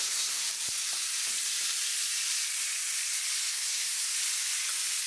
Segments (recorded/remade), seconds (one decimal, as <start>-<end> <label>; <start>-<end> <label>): 0.0-0.4 remade; 0.4-3.5 recorded; 3.5-4.1 remade; 4.1-5.1 recorded